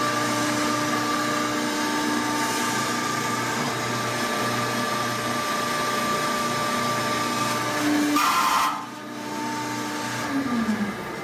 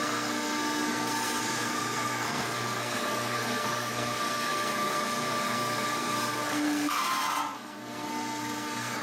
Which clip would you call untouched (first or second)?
first